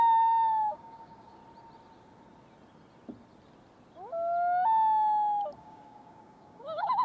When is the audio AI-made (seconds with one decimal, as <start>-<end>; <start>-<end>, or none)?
0.0-1.4; 5.6-7.0